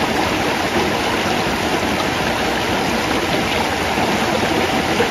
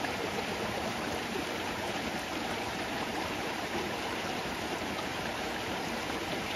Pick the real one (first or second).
first